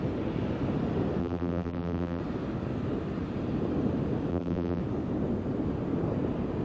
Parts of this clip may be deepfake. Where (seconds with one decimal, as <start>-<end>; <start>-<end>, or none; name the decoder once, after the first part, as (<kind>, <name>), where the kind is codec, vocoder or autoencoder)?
1.2-2.2 (vocoder, BigVGAN v2); 4.3-4.8